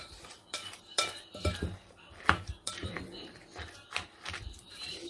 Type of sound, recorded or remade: remade